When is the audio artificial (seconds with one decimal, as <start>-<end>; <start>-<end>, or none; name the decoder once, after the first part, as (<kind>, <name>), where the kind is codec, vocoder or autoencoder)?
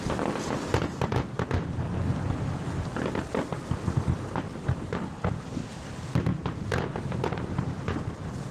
none